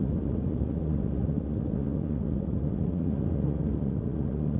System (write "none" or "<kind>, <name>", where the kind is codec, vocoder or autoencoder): vocoder, Vocos